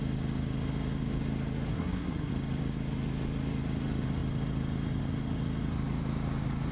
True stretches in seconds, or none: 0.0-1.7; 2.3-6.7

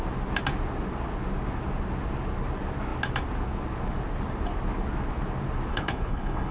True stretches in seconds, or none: 0.0-5.7

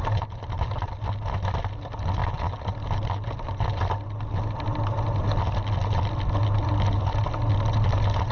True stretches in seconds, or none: 0.0-8.3

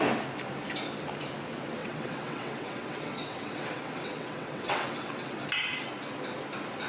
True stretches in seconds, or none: 0.0-1.8; 5.4-6.9

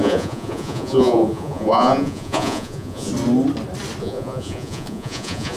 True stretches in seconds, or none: 3.1-4.0

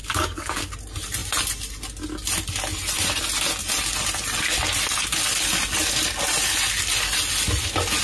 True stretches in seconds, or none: 0.7-8.0

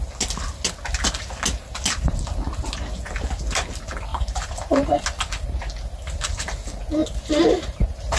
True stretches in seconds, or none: 0.0-4.1; 5.0-7.0

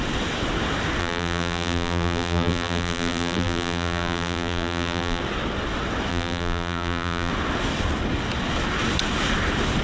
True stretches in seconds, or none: 0.0-1.0; 5.2-6.1; 7.3-9.8